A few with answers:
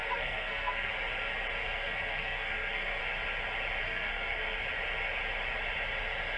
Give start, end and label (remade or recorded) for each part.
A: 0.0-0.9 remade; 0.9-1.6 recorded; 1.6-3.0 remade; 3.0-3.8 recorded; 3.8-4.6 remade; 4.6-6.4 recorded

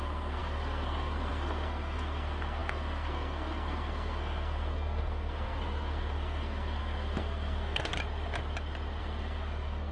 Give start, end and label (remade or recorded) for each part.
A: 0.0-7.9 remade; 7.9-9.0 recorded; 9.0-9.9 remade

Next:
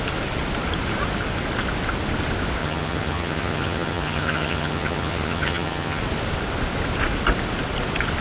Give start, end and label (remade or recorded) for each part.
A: 0.0-2.6 recorded; 2.6-6.0 remade; 6.0-8.2 recorded